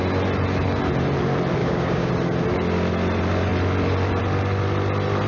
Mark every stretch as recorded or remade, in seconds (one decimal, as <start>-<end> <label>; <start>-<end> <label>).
0.0-1.6 recorded; 1.6-2.1 remade; 2.1-5.3 recorded